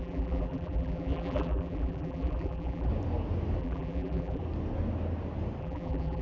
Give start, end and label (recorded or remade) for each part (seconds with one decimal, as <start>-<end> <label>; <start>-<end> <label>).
0.0-2.9 remade; 2.9-3.6 recorded; 3.6-4.4 remade; 4.4-5.6 recorded; 5.6-6.2 remade